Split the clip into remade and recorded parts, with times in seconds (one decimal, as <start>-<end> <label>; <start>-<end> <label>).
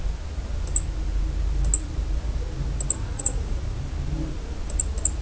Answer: 0.0-3.0 recorded; 3.0-3.6 remade; 3.6-5.2 recorded